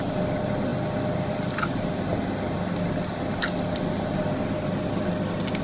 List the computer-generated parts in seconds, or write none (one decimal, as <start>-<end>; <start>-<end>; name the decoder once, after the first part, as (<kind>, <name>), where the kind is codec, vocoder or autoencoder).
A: none